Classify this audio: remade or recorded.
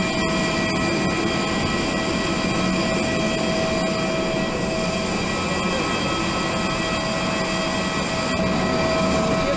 recorded